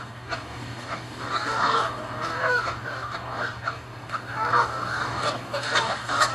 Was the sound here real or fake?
fake